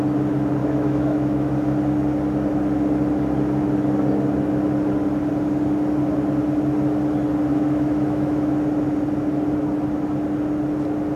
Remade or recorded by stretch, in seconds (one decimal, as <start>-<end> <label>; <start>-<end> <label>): 0.0-0.6 recorded; 0.6-1.5 remade; 1.5-7.5 recorded; 7.5-8.5 remade; 8.5-11.2 recorded